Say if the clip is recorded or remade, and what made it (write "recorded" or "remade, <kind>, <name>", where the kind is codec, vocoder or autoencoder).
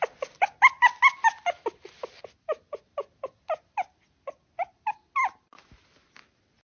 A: recorded